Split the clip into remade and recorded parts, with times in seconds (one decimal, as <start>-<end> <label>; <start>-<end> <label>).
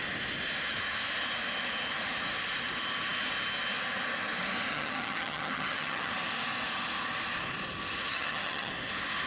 0.0-4.7 recorded; 4.7-6.1 remade; 6.1-8.1 recorded; 8.1-8.7 remade; 8.7-9.3 recorded